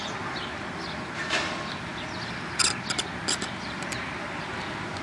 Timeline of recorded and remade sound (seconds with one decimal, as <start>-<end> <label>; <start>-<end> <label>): 0.0-5.0 recorded